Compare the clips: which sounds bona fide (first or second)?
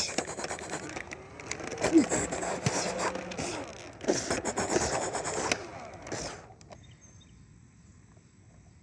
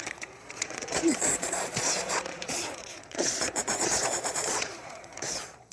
first